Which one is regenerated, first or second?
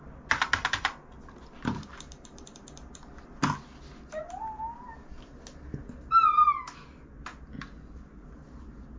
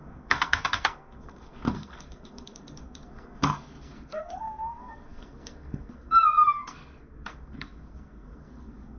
second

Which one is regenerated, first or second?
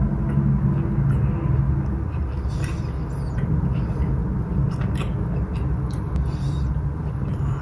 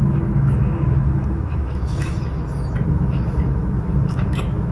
second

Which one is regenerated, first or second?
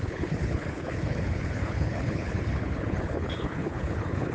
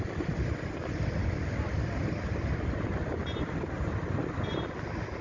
first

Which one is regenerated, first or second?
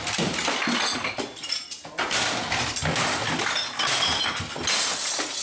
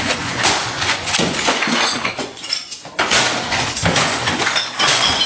second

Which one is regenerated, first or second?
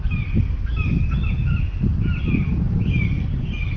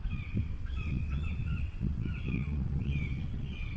second